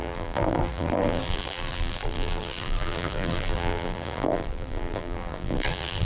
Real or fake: fake